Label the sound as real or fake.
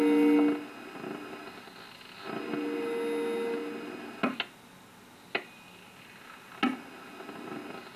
real